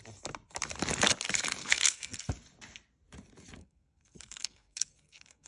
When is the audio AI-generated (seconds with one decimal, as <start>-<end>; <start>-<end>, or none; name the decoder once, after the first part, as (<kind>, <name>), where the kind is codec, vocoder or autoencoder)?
1.6-2.2 (codec, SNAC); 3.6-5.5